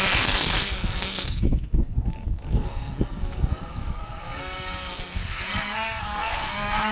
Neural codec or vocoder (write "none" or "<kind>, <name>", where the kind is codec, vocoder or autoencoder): codec, SNAC